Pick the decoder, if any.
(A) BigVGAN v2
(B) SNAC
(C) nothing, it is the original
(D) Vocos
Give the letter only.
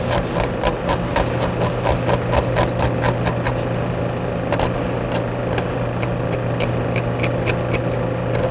C